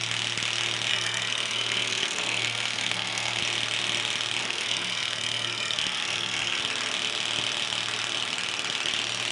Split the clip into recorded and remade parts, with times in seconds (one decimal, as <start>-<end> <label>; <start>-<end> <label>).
0.0-0.9 recorded; 0.9-3.4 remade; 3.4-4.4 recorded; 4.4-6.6 remade; 6.6-9.3 recorded

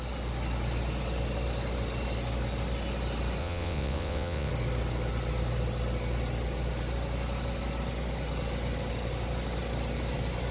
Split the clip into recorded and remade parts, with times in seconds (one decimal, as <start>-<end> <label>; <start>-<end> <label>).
0.0-3.4 recorded; 3.4-4.5 remade; 4.5-10.5 recorded

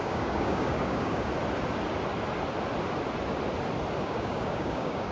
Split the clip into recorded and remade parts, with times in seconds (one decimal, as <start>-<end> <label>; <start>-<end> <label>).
0.0-1.3 remade; 1.3-4.0 recorded; 4.0-5.1 remade

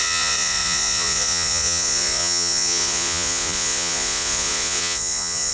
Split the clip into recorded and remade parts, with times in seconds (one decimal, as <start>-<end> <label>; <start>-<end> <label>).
0.0-5.5 remade